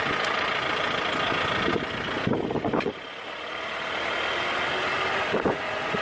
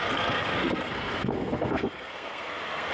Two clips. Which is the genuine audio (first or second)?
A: first